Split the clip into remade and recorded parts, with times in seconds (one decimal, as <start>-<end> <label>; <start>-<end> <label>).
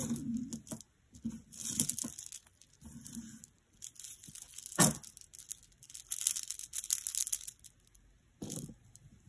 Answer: 0.0-9.3 recorded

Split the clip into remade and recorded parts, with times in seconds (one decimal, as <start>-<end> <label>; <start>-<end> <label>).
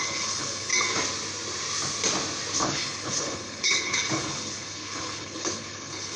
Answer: 0.0-0.7 remade; 0.7-2.6 recorded; 2.6-6.2 remade